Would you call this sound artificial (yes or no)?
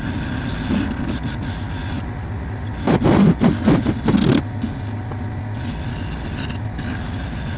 no